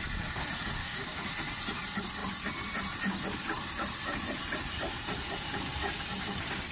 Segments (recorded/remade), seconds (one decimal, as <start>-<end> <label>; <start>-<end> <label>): 0.0-0.8 recorded; 0.8-1.3 remade; 1.3-6.7 recorded